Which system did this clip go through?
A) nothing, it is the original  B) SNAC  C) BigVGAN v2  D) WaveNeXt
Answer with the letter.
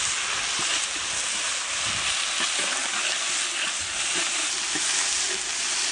A